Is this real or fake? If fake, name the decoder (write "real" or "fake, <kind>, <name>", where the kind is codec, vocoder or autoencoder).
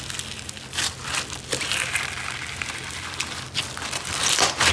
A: real